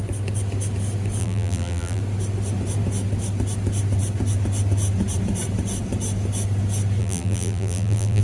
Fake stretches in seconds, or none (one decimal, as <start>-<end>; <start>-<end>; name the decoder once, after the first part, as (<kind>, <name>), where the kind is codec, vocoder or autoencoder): 1.2-2.0 (vocoder, BigVGAN v2); 7.0-8.2